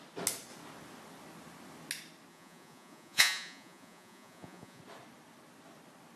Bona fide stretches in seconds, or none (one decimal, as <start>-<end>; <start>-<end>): 0.0-2.3; 4.8-6.2